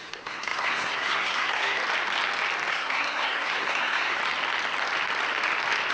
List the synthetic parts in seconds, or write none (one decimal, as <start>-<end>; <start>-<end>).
0.0-1.8; 2.7-4.2

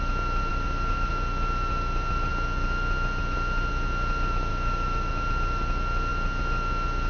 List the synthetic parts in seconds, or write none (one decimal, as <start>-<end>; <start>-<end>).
0.5-1.1; 4.5-5.1

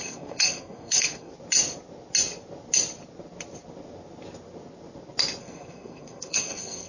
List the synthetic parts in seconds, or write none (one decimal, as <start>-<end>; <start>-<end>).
0.0-1.3; 5.4-6.9

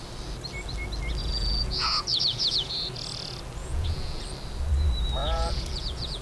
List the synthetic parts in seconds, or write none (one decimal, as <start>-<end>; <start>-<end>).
1.2-2.7; 3.6-4.2; 5.2-6.2

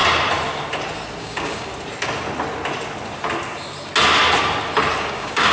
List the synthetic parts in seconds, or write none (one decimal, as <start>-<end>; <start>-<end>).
1.2-1.7; 5.0-5.5

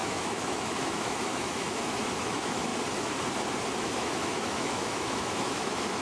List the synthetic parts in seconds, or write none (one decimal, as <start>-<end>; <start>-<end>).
0.0-2.7; 3.8-6.0

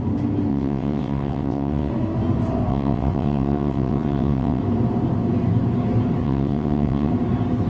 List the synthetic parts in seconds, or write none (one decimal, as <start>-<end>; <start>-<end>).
0.5-1.9; 2.7-4.6; 6.2-7.1

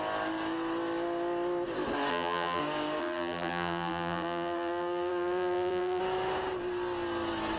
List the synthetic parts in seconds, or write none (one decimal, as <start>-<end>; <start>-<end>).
2.1-2.6; 3.0-6.0